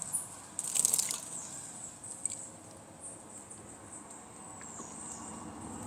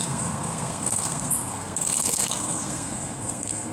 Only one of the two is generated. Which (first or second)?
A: second